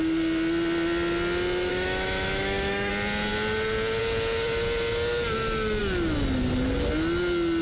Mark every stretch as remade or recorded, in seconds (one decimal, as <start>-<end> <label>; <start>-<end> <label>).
0.0-1.7 recorded; 1.7-2.9 remade; 2.9-7.6 recorded